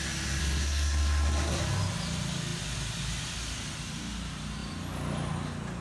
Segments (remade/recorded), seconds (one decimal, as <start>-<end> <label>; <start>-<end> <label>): 0.0-0.4 recorded; 0.4-1.6 remade; 1.6-5.8 recorded